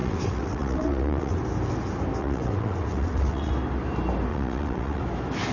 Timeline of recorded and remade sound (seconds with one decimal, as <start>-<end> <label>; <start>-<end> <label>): 0.0-1.4 remade; 1.4-2.2 recorded; 2.2-3.5 remade; 3.5-4.3 recorded; 4.3-5.0 remade; 5.0-5.5 recorded